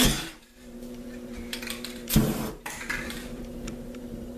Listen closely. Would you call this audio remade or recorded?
remade